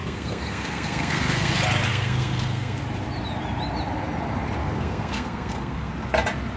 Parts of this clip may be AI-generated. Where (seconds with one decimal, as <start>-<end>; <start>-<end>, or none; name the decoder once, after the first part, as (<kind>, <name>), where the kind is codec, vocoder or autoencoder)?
0.0-1.5 (codec, SNAC); 1.9-2.8; 4.6-5.9